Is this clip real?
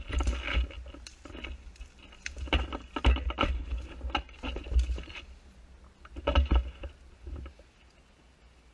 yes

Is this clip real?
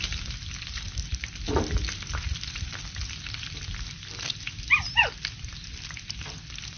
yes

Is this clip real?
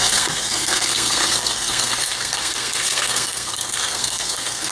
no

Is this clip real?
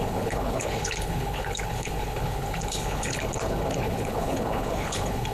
no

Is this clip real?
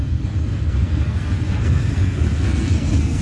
no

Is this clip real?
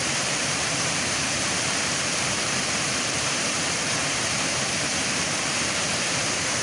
no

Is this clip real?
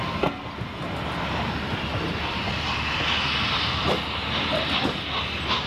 yes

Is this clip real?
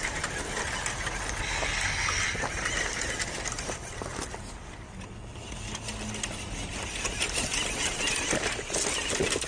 yes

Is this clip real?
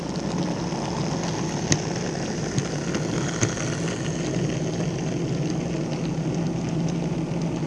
yes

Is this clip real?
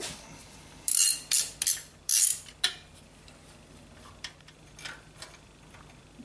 yes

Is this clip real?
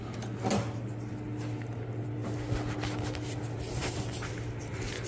yes